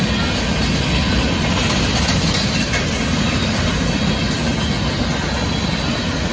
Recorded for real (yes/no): yes